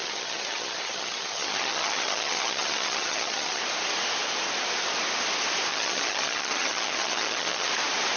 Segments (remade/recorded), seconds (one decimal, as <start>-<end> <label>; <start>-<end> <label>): 0.0-3.6 remade; 3.6-5.7 recorded; 5.7-7.7 remade; 7.7-8.2 recorded